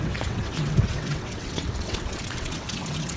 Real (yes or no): no